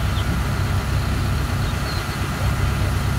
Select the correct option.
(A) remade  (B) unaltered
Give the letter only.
B